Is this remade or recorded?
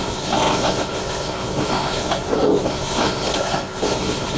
remade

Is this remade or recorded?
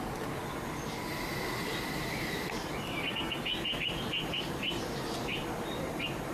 recorded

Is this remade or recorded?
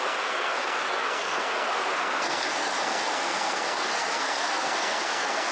remade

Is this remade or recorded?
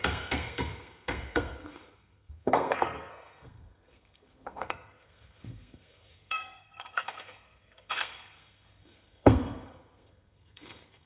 remade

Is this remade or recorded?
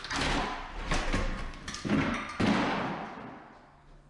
recorded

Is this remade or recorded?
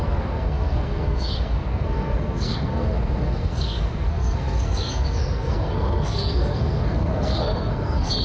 remade